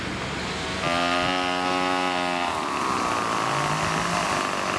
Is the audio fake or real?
real